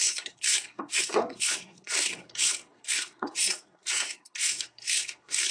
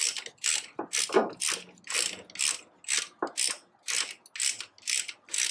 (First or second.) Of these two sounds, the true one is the second